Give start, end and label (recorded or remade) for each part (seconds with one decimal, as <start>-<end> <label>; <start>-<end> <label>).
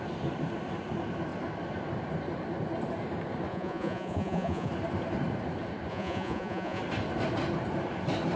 0.0-3.5 recorded; 3.5-4.7 remade; 4.7-5.9 recorded; 5.9-6.8 remade; 6.8-8.4 recorded